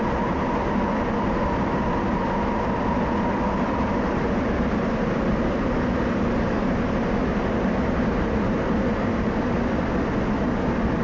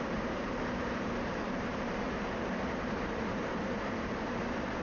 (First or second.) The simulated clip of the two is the second